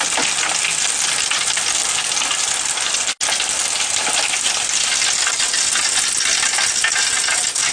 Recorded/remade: recorded